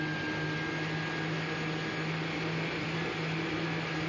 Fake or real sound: real